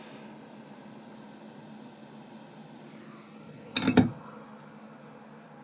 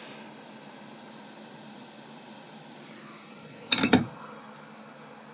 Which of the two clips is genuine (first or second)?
first